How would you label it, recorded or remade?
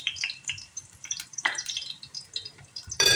remade